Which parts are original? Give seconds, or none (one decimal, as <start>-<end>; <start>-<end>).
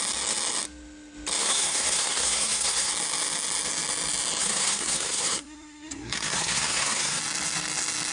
0.0-1.4; 2.9-4.4; 7.2-8.1